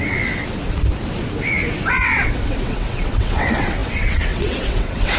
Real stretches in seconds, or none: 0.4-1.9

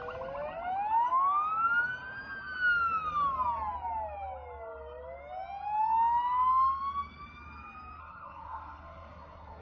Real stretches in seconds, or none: 0.0-8.0

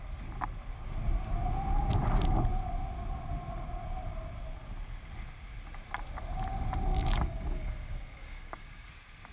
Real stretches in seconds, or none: 0.0-6.9; 8.9-9.3

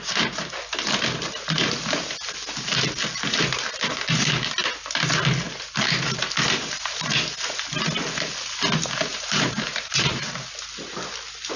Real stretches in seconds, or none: 0.0-9.1; 10.3-11.6

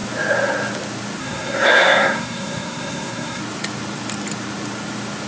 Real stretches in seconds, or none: 0.0-1.2; 3.4-5.3

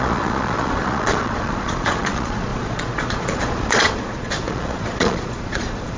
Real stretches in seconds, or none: none

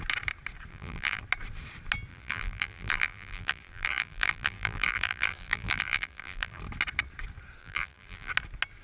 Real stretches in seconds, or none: 0.0-0.7; 1.2-2.1; 6.6-7.6; 8.3-8.8